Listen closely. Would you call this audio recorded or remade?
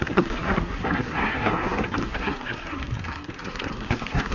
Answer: remade